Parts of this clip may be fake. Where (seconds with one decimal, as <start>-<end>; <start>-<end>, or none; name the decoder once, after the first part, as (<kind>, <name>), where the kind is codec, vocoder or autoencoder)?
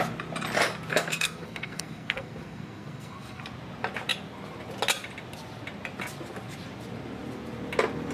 0.9-3.4 (codec, SNAC)